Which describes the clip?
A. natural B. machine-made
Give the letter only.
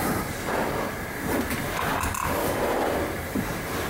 A